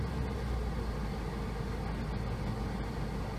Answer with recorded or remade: recorded